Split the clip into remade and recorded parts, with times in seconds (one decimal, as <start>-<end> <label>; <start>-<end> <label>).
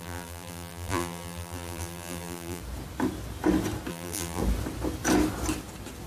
0.0-2.6 remade; 2.6-3.9 recorded; 3.9-4.4 remade; 4.4-6.1 recorded